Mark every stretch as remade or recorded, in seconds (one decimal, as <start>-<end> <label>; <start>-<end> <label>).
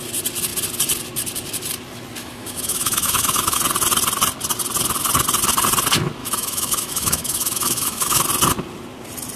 0.0-2.2 recorded; 2.2-3.6 remade; 3.6-6.2 recorded; 6.2-8.2 remade; 8.2-9.4 recorded